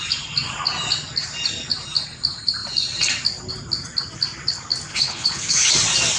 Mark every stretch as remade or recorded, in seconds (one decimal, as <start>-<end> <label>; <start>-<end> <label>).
0.0-4.9 recorded; 4.9-5.7 remade; 5.7-6.2 recorded